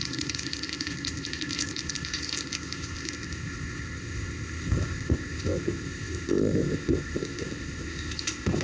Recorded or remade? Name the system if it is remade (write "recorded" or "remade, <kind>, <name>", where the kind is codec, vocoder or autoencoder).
remade, codec, ZipCodec